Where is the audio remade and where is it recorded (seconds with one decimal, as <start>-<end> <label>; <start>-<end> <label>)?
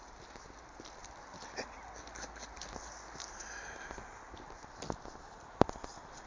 0.0-6.3 recorded